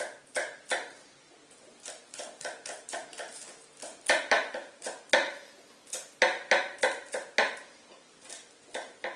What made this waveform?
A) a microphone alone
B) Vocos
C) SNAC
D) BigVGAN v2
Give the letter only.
A